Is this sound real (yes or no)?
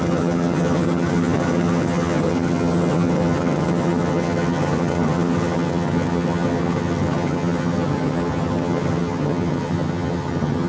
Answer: no